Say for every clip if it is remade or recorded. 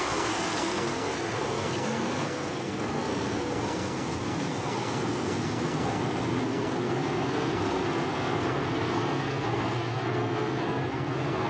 remade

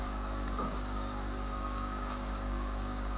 remade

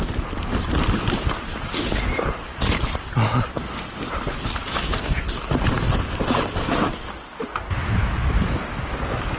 recorded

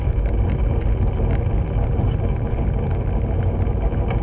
recorded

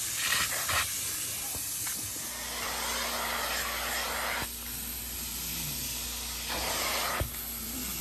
recorded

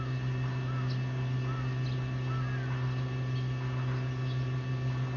recorded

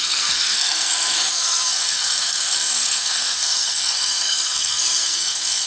remade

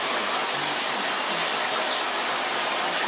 recorded